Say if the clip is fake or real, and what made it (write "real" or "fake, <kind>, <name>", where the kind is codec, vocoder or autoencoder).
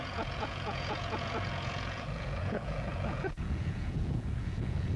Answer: fake, vocoder, Vocos